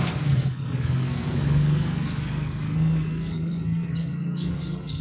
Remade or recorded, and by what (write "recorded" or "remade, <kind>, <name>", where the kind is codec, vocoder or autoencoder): remade, codec, SNAC